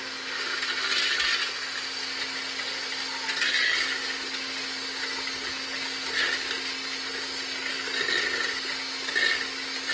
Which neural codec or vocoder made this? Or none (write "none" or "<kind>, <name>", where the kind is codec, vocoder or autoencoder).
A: none